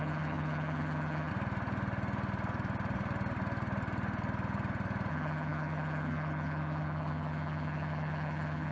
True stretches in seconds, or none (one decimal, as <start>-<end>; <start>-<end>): 1.3-5.1